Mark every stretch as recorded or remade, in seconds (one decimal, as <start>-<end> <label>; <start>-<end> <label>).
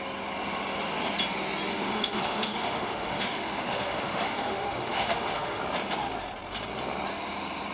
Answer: 0.0-1.7 recorded; 1.7-5.6 remade; 5.6-7.7 recorded